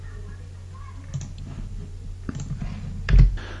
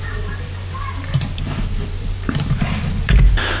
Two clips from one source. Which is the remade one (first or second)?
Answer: second